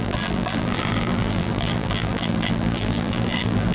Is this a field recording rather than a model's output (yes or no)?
no